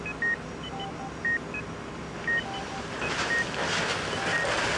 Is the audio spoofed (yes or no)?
no